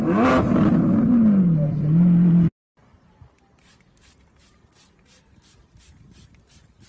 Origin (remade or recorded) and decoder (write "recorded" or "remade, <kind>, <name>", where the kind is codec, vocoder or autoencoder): recorded